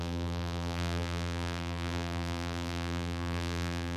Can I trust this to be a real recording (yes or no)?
no